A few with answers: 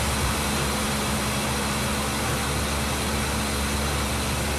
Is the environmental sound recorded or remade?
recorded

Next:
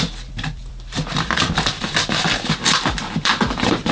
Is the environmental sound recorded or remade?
remade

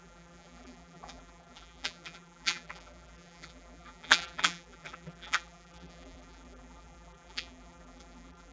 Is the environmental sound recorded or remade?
remade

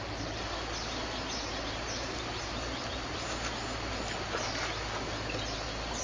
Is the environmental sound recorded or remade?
recorded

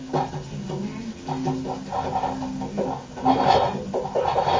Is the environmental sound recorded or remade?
recorded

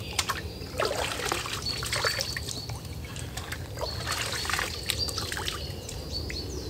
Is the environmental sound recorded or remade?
recorded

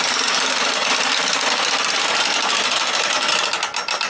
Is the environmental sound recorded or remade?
recorded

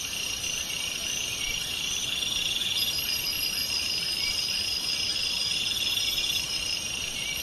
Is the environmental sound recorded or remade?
remade